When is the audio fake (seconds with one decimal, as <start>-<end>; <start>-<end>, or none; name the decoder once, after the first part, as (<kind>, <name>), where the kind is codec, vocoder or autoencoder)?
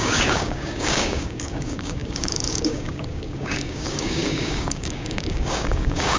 0.0-6.2 (codec, DAC)